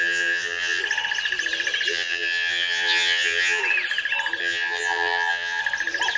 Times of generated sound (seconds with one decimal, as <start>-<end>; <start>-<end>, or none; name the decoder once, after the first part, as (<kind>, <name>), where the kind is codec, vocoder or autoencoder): 0.0-0.8 (vocoder, HiFi-GAN); 1.9-3.6; 4.4-5.6